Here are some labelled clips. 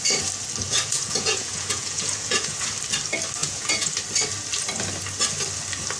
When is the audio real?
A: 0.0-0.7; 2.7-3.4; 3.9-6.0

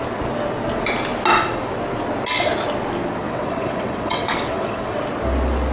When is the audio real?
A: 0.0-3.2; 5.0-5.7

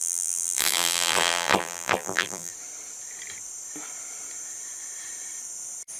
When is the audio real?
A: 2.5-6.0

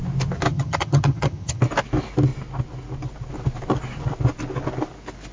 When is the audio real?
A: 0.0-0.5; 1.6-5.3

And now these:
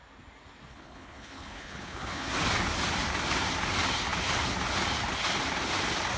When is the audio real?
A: 0.0-0.7; 2.3-6.2